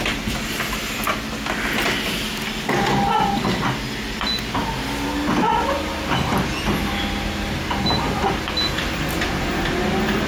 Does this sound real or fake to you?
real